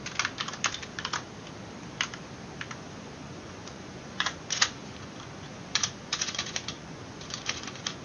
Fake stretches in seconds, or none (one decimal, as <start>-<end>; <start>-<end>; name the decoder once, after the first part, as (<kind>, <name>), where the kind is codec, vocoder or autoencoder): 2.7-8.0 (vocoder, Vocos)